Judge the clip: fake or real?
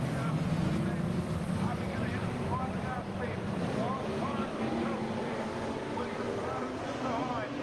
fake